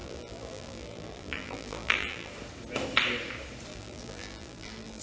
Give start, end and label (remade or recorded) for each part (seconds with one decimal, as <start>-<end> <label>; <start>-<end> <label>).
0.0-2.3 remade; 2.3-3.7 recorded; 3.7-5.0 remade